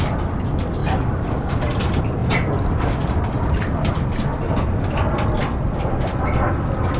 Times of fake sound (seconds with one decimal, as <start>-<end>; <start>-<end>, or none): none